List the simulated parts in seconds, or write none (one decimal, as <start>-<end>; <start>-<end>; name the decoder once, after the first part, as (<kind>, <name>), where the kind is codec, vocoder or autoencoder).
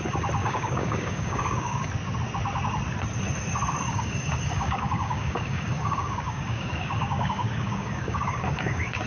0.4-1.9 (codec, DAC); 3.9-9.1